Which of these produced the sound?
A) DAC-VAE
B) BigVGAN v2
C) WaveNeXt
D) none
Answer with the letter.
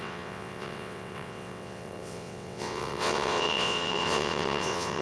C